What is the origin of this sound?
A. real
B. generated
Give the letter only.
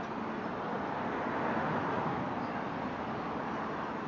A